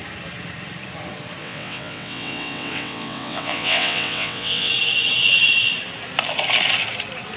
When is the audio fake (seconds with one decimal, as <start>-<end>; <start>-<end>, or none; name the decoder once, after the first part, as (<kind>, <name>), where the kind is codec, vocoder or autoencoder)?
1.4-4.7 (vocoder, WaveNeXt)